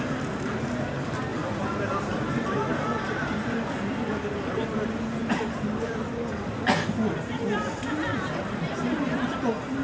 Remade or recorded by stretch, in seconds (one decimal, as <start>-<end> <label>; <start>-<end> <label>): 0.0-1.3 recorded; 1.3-4.5 remade; 4.5-5.2 recorded; 5.2-6.1 remade; 6.1-8.0 recorded; 8.0-9.8 remade